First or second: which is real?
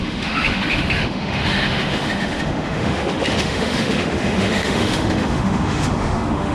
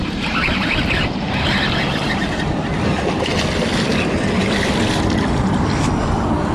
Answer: second